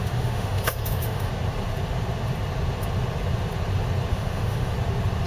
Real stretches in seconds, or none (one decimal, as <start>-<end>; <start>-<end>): 1.3-4.1; 4.7-5.3